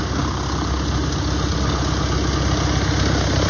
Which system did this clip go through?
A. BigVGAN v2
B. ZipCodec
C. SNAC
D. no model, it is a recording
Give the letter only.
D